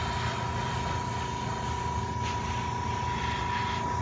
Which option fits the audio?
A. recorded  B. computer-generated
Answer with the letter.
A